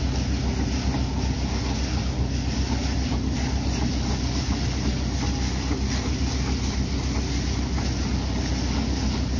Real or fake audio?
real